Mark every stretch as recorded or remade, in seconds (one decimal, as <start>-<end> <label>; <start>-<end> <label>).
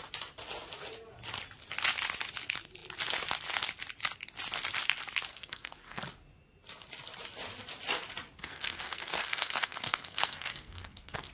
0.0-5.3 recorded; 5.3-6.0 remade; 6.0-8.4 recorded; 8.4-11.3 remade